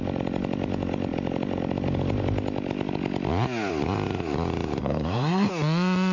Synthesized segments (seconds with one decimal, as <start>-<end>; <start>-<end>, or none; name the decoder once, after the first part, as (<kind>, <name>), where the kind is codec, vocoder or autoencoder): 4.8-5.5 (codec, SNAC)

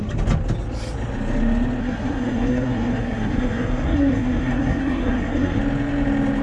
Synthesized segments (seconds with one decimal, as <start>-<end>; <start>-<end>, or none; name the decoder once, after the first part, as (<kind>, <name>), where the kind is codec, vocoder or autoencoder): 1.8-5.6 (codec, SNAC)

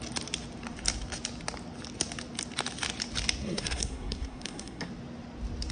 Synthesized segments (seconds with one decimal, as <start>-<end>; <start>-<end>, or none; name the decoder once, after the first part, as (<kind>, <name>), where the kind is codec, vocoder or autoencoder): 3.4-4.9 (codec, SNAC)

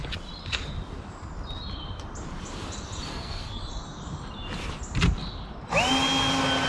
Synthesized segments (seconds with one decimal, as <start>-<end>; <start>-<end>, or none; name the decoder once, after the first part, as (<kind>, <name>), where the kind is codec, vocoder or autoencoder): 3.1-3.6 (codec, SNAC)

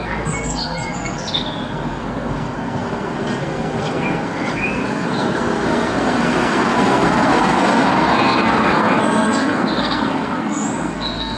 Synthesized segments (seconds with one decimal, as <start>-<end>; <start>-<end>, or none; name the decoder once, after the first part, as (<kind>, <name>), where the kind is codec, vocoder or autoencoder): 0.0-11.4 (codec, SNAC)